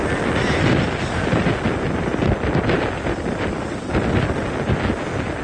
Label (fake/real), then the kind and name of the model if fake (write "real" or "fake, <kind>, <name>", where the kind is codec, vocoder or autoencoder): real